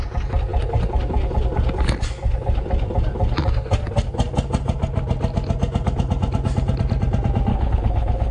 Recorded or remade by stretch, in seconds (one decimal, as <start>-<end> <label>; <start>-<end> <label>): 0.0-7.5 recorded; 7.5-8.3 remade